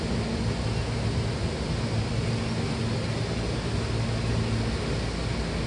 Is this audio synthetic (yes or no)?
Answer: no